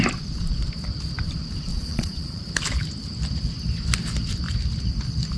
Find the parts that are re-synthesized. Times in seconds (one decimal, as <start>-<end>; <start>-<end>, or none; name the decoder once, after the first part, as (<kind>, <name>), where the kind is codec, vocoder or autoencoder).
1.7-2.4 (vocoder, Vocos)